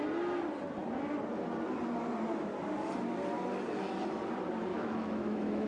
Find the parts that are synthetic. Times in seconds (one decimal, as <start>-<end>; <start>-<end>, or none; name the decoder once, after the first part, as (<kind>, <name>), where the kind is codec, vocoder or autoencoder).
4.7-5.7 (autoencoder, DAC-VAE)